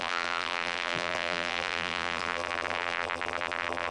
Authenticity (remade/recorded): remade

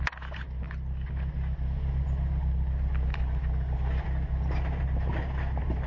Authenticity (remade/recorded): recorded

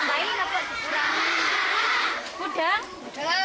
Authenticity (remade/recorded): remade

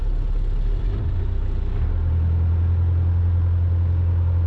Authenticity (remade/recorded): recorded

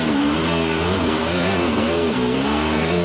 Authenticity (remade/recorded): remade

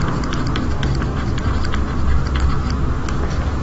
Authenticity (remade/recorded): recorded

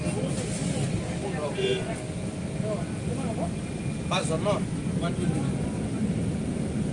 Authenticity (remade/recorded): recorded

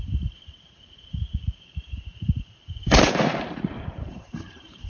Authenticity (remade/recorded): remade